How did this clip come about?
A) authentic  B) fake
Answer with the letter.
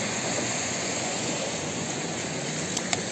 B